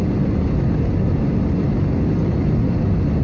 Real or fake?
real